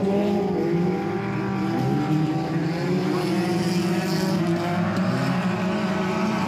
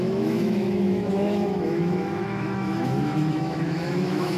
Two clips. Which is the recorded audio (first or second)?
first